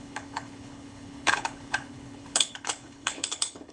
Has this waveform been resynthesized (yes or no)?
yes